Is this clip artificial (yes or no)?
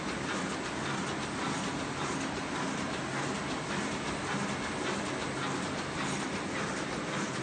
no